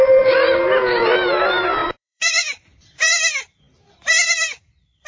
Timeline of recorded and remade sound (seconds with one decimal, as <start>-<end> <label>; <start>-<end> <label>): 0.0-5.1 remade